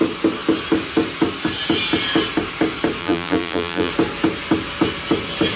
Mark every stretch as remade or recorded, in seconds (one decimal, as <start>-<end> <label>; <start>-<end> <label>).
0.0-3.0 recorded; 3.0-3.9 remade; 3.9-5.6 recorded